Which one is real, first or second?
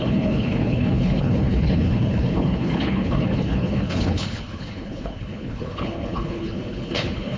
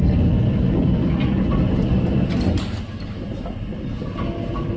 second